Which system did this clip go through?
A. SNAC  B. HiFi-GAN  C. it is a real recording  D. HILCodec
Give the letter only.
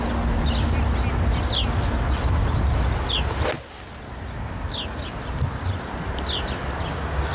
C